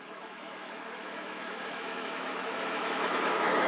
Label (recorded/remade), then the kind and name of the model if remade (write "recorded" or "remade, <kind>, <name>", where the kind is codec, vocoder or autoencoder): remade, autoencoder, DAC-VAE